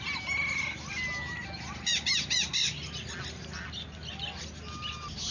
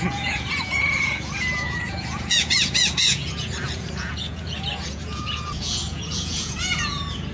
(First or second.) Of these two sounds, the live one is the first